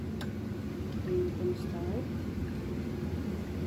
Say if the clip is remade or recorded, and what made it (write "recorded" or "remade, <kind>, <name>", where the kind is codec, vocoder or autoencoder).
recorded